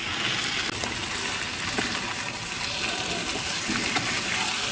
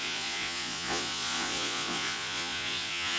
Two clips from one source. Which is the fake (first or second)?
second